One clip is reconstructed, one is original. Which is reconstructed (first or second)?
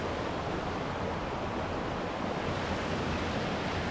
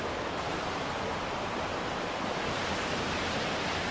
second